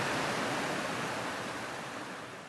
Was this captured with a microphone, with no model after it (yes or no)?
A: yes